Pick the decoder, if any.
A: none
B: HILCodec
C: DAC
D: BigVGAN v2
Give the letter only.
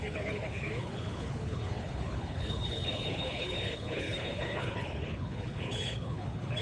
B